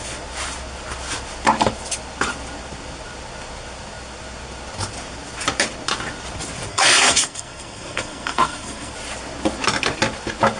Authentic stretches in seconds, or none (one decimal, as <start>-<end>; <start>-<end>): 0.0-6.7; 8.9-10.6